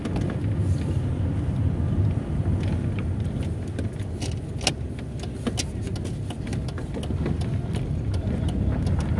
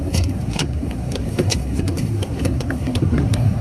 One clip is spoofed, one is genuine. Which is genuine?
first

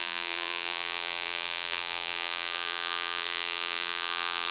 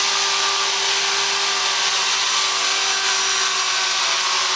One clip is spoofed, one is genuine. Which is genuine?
second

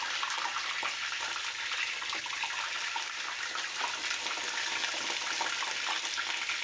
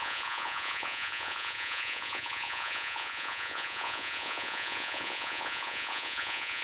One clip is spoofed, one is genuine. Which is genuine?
first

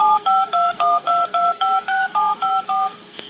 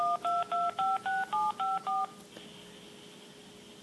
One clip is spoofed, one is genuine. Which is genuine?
second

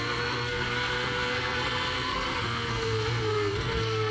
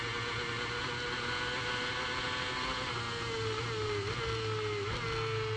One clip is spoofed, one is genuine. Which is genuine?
second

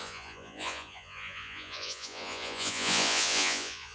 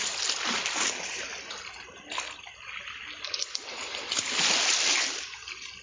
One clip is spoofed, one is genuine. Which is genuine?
second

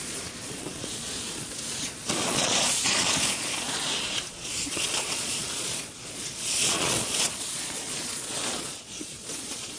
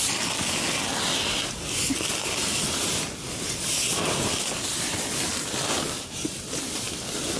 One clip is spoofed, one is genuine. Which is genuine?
second